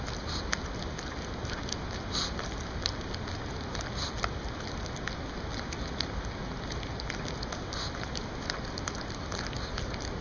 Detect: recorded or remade recorded